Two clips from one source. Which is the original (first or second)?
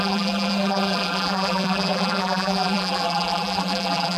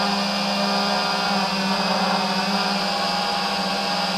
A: second